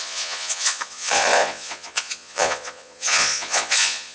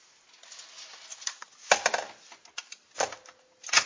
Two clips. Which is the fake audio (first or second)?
first